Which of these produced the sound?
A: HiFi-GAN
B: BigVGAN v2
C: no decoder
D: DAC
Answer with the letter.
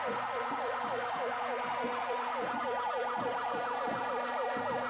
C